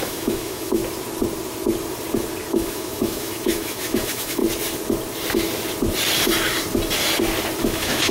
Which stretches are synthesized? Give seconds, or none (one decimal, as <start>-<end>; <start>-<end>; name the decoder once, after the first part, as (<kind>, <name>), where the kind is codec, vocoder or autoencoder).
0.0-0.8 (autoencoder, DAC-VAE); 2.5-4.4; 7.6-8.1